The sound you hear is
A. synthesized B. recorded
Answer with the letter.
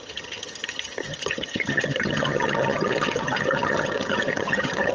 A